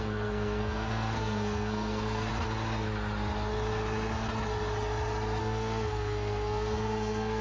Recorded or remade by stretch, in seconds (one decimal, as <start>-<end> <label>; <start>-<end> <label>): 0.0-2.3 remade; 2.3-5.4 recorded; 5.4-7.4 remade